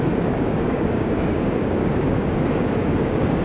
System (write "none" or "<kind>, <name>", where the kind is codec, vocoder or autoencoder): codec, DAC